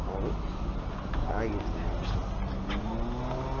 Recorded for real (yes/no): yes